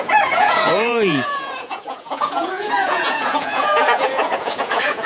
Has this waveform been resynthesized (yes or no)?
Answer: yes